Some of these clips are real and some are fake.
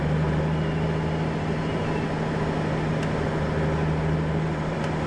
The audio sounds real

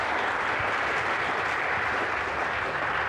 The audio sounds real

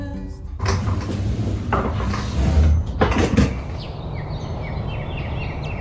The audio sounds real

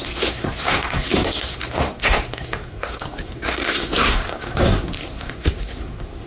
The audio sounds fake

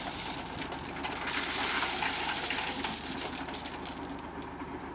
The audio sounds real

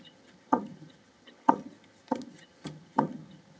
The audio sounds fake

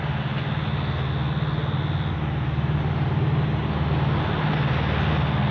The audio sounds real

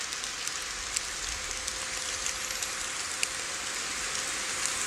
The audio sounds real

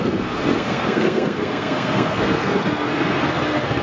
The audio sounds fake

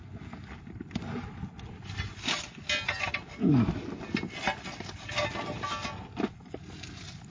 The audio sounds real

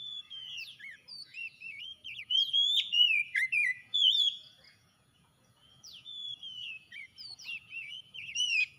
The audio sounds fake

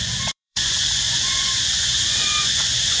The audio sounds fake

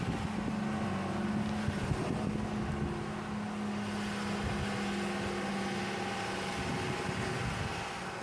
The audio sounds real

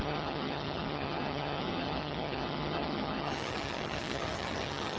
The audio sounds fake